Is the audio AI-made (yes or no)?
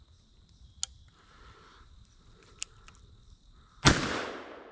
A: no